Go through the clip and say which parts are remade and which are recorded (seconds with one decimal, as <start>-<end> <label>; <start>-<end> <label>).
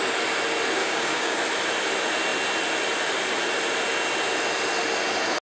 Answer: 0.0-0.8 recorded; 0.8-1.4 remade; 1.4-5.6 recorded